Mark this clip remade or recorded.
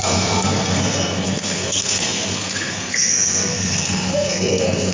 remade